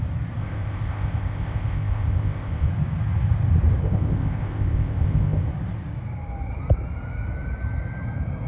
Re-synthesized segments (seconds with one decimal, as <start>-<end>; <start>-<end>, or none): 0.4-2.7; 3.8-5.5

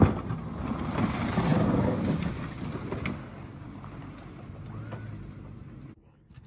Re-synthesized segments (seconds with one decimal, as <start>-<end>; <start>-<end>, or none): none

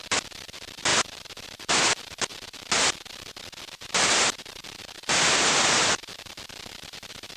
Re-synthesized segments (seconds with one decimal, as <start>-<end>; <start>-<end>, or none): 0.0-7.4

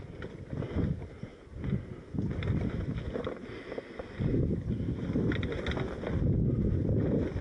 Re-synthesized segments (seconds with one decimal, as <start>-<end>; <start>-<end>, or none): none

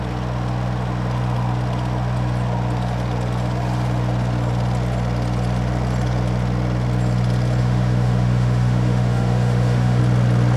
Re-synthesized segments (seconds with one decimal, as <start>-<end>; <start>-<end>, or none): 7.6-10.0